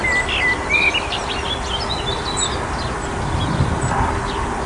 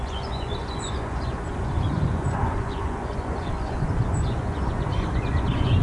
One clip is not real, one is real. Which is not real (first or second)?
second